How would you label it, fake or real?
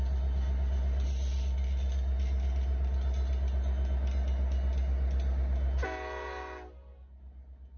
real